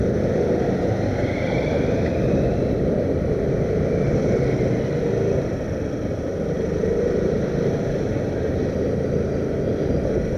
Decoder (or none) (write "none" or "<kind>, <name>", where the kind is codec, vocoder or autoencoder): none